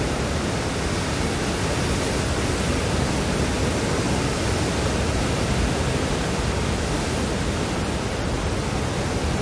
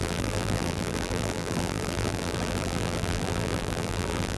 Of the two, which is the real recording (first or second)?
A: first